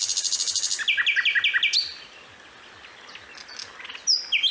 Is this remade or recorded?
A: recorded